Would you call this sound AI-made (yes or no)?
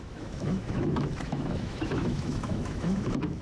yes